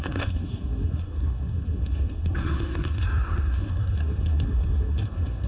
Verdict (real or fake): fake